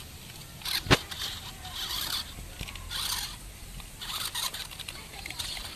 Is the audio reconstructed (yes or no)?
no